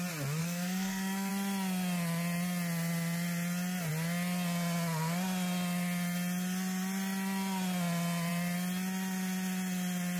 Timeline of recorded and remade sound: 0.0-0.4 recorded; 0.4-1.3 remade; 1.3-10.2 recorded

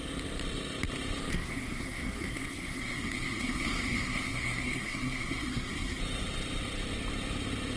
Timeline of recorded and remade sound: 0.0-1.3 recorded; 1.3-6.0 remade; 6.0-7.8 recorded

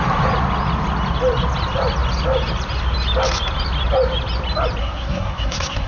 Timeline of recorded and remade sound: 0.0-4.8 recorded; 4.8-5.9 remade